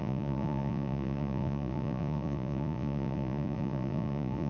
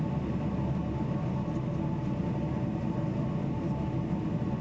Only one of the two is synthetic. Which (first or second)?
first